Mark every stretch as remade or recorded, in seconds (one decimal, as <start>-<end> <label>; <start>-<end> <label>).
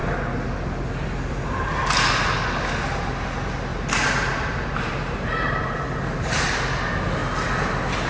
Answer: 0.0-3.7 recorded; 3.7-6.4 remade; 6.4-8.1 recorded